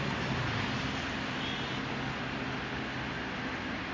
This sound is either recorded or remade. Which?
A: recorded